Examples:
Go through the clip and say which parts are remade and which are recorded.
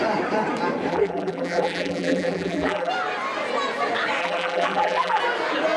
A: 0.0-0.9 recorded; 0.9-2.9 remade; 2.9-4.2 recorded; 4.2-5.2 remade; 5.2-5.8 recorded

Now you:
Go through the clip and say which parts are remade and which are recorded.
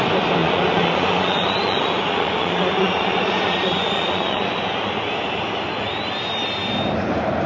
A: 0.0-0.4 recorded; 0.4-4.9 remade; 4.9-7.5 recorded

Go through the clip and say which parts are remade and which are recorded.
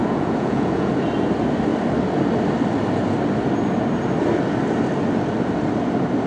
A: 0.0-0.9 remade; 0.9-6.3 recorded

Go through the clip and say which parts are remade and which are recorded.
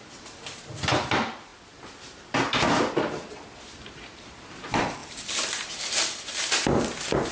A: 0.0-1.5 remade; 1.5-2.9 recorded; 2.9-7.3 remade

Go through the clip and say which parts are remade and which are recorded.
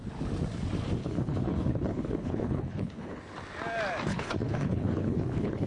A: 0.0-1.0 recorded; 1.0-3.2 remade; 3.2-4.1 recorded; 4.1-5.7 remade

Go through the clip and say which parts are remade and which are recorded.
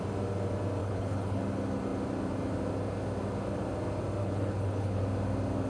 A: 0.0-0.8 recorded; 0.8-1.4 remade; 1.4-4.2 recorded; 4.2-5.0 remade; 5.0-5.7 recorded